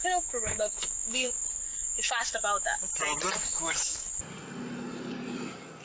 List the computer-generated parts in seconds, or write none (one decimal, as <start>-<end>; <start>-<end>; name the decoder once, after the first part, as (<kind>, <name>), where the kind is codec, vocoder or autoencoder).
0.0-1.3 (autoencoder, DAC-VAE); 1.8-2.3; 3.5-4.1